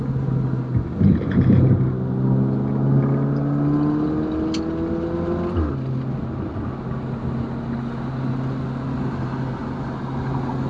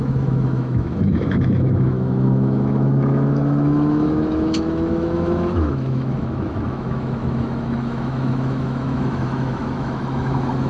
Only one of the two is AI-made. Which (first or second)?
second